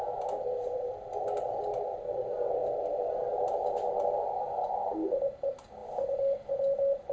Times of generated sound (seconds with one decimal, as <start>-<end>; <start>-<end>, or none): none